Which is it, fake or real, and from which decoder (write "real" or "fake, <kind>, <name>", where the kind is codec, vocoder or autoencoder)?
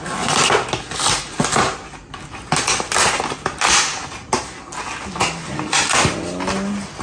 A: real